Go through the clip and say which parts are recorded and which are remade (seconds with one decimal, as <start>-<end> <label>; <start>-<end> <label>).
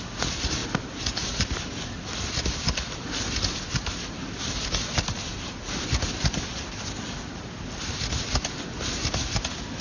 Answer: 0.0-9.8 recorded